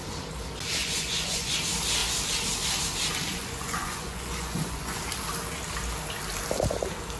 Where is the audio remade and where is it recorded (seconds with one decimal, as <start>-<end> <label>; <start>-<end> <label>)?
0.0-0.8 recorded; 0.8-1.6 remade; 1.6-3.3 recorded; 3.3-5.0 remade; 5.0-7.2 recorded